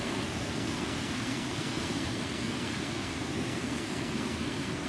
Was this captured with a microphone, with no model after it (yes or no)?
no